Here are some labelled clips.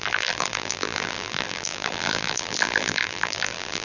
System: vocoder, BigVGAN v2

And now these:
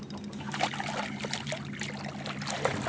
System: none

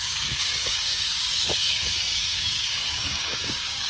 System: codec, DAC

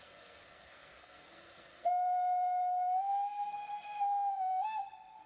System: codec, SNAC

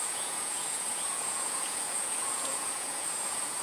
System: vocoder, Vocos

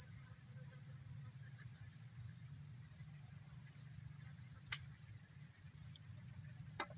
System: none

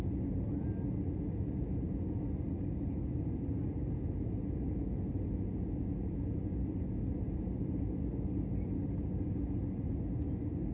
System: none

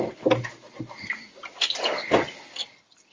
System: none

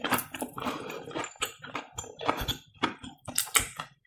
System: vocoder, BigVGAN v2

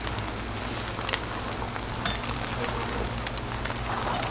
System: none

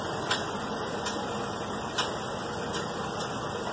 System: none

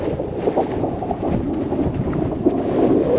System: none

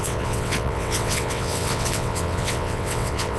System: vocoder, WaveNeXt